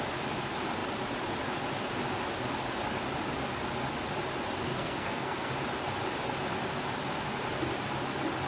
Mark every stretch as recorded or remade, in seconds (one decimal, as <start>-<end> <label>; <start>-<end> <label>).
0.0-4.7 recorded; 4.7-5.5 remade; 5.5-8.5 recorded